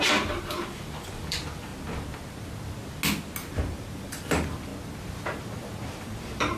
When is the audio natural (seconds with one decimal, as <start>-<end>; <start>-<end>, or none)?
1.7-4.1; 4.7-5.4

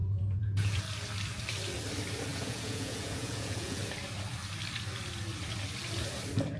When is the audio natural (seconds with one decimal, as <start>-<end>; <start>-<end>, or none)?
0.8-2.3; 3.8-6.6

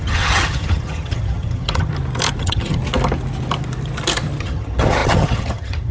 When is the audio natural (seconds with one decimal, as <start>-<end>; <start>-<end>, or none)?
1.9-2.4; 2.8-4.4